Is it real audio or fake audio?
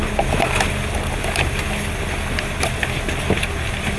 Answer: real